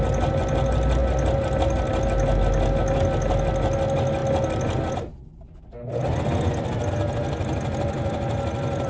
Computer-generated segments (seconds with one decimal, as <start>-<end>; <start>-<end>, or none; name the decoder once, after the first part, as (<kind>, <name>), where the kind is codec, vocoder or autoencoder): none